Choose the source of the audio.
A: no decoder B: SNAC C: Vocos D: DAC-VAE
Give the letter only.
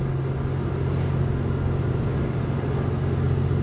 A